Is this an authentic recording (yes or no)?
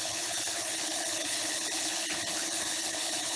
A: no